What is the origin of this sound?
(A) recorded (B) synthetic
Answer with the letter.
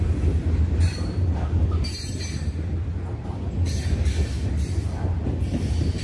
A